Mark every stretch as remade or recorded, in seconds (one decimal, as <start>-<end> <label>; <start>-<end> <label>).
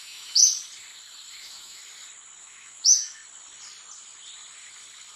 0.0-0.4 remade; 0.4-1.3 recorded; 1.3-1.8 remade; 1.8-2.4 recorded; 2.4-3.2 remade; 3.2-5.2 recorded